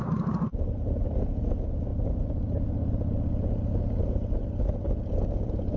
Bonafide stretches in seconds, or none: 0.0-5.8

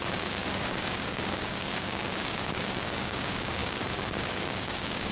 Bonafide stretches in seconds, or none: none

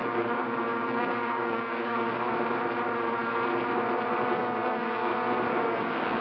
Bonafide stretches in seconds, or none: 2.1-4.4; 5.1-5.6

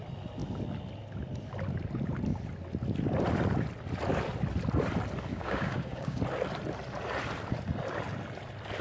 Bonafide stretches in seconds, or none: 0.0-5.3; 6.2-8.8

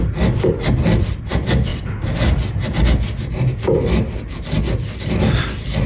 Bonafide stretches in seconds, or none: 0.0-5.9

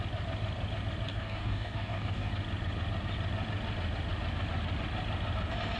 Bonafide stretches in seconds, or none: 0.0-1.1; 2.3-5.8

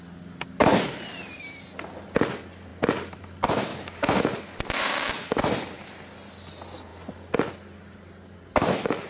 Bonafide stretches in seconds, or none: 0.0-3.7; 4.2-9.1

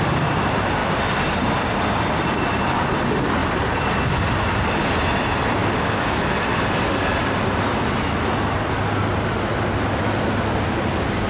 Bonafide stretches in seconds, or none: 0.0-5.6; 6.2-11.3